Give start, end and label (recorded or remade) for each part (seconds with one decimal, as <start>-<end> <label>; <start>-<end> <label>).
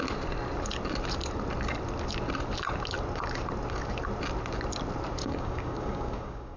0.0-5.2 recorded; 5.2-6.6 remade